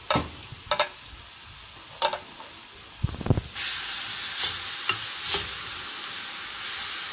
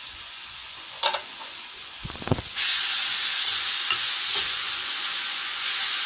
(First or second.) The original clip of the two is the first